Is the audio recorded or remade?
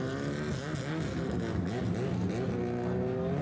recorded